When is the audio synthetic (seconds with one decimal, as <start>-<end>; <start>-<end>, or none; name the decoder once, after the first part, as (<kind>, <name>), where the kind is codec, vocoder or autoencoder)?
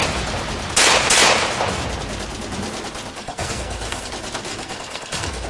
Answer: 3.2-4.1 (codec, SNAC); 4.5-5.5